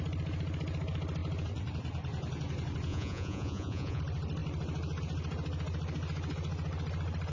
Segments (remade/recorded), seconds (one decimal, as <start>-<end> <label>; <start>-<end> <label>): 0.0-2.9 recorded; 2.9-4.0 remade; 4.0-7.3 recorded